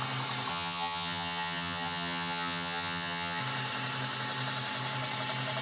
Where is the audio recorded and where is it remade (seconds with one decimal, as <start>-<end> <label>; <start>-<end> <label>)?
0.0-0.5 recorded; 0.5-3.4 remade; 3.4-5.6 recorded